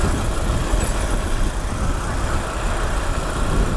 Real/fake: real